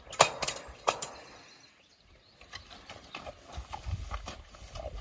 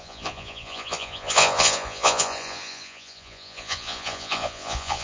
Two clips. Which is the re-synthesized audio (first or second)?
second